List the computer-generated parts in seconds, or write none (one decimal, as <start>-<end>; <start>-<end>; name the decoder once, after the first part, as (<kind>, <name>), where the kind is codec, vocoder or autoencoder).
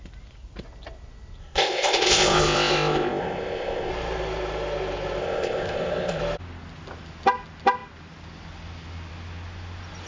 1.4-3.9 (codec, ZipCodec); 5.2-6.2